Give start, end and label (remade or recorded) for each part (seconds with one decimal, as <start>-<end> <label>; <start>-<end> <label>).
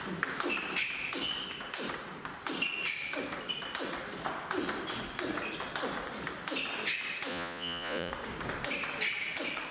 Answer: 0.0-7.3 recorded; 7.3-8.1 remade; 8.1-9.7 recorded